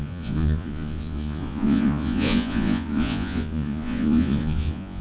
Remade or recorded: remade